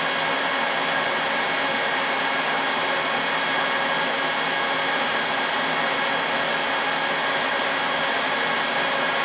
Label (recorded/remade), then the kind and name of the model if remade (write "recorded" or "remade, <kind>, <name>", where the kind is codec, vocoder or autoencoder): recorded